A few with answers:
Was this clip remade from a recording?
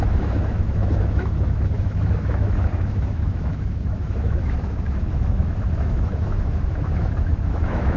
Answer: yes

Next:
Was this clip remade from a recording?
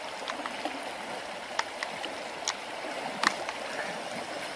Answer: no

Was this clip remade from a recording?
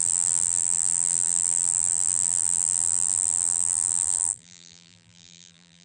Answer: yes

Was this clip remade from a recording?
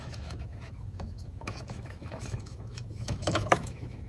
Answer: yes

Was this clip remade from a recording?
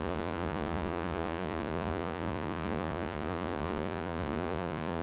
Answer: yes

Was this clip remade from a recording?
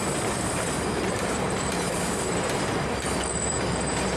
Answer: yes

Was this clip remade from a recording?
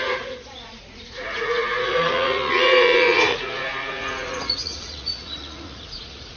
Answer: yes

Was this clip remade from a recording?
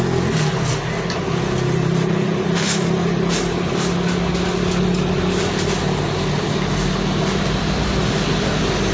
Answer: no